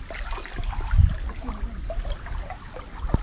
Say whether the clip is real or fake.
real